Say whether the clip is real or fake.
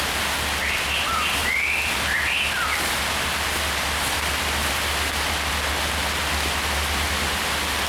real